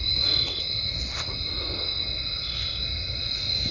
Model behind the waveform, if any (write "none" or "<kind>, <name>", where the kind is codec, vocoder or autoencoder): none